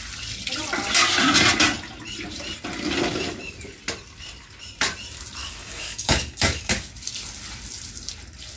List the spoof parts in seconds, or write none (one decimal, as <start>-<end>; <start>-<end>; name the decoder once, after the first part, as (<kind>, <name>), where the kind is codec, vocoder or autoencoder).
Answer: 5.4-6.9 (codec, DAC)